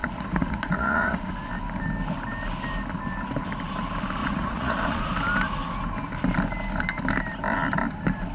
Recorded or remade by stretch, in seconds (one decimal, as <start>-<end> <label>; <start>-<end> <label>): 0.0-1.3 remade; 1.3-4.2 recorded; 4.2-5.1 remade; 5.1-8.3 recorded

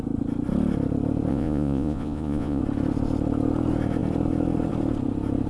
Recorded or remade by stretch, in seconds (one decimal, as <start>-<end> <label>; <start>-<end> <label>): 0.0-1.3 recorded; 1.3-2.6 remade; 2.6-5.5 recorded

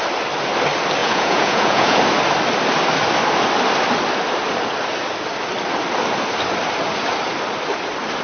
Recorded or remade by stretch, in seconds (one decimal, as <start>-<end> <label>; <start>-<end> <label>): 0.0-1.0 recorded; 1.0-2.0 remade; 2.0-8.2 recorded

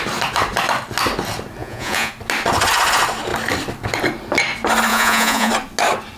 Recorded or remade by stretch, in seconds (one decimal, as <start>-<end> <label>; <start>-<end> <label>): 0.0-1.6 recorded; 1.6-2.1 remade; 2.1-4.9 recorded; 4.9-5.5 remade; 5.5-6.2 recorded